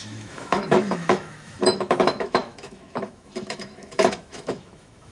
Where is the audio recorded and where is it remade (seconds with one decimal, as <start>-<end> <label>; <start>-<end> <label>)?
0.0-5.1 remade